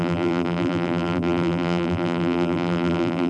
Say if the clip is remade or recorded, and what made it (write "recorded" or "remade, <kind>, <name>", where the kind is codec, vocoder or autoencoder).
remade, vocoder, BigVGAN v2